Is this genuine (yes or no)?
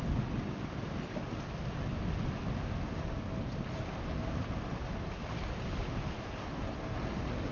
yes